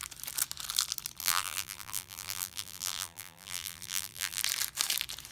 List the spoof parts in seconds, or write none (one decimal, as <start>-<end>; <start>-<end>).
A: 1.2-4.4